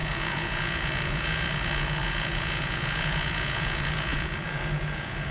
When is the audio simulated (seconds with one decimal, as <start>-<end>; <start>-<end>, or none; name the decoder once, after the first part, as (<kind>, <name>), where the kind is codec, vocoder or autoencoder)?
0.0-5.3 (vocoder, Vocos)